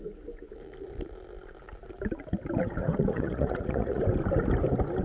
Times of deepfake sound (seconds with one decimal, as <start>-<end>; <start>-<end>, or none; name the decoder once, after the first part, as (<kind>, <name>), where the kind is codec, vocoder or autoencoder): 2.8-4.0 (vocoder, Vocos)